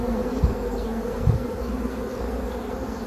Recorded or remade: remade